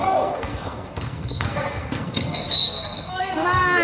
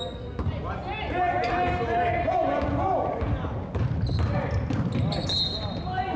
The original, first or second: second